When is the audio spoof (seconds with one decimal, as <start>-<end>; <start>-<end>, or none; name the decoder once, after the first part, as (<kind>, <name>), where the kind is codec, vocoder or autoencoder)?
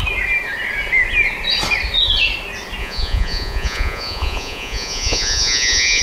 2.8-6.0 (vocoder, Vocos)